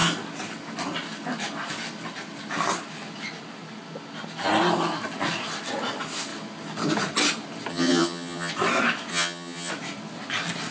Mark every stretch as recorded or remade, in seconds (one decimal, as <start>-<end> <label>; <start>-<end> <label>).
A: 0.0-7.7 recorded; 7.7-8.5 remade; 8.5-9.1 recorded; 9.1-9.7 remade; 9.7-10.7 recorded